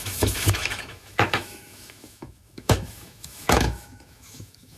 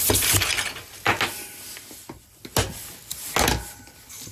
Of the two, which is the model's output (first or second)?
first